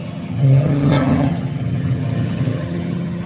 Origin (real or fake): fake